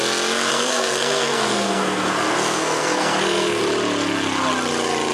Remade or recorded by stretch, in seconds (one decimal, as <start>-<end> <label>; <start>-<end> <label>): 0.0-0.5 recorded; 0.5-3.6 remade; 3.6-5.1 recorded